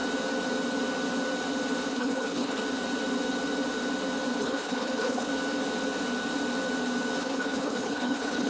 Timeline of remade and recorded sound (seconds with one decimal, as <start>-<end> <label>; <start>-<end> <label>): 0.0-1.9 recorded; 1.9-2.6 remade; 2.6-4.4 recorded; 4.4-5.3 remade; 5.3-7.2 recorded; 7.2-8.5 remade

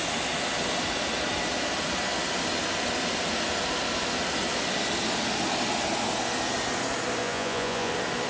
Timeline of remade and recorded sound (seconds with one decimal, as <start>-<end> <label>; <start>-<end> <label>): 0.0-7.2 recorded; 7.2-7.9 remade; 7.9-8.3 recorded

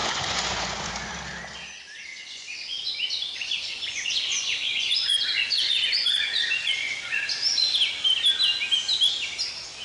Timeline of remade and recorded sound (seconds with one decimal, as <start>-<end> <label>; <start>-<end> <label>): 0.0-1.1 remade; 1.1-2.1 recorded; 2.1-7.2 remade; 7.2-9.8 recorded